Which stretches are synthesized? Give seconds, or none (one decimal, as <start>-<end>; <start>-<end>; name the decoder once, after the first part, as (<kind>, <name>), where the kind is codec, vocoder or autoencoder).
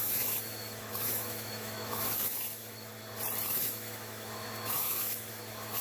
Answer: 0.0-2.9 (autoencoder, DAC-VAE); 3.5-5.8